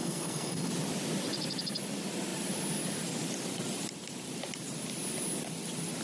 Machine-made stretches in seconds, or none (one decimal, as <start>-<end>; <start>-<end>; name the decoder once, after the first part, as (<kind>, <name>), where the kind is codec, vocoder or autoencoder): 0.0-0.7 (codec, SNAC)